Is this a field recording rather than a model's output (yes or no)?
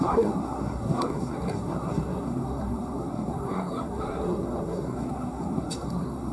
no